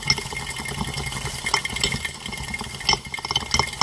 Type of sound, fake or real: real